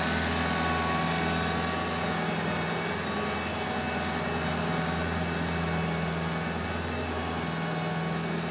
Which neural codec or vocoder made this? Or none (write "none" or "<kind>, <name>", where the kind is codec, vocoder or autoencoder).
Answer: none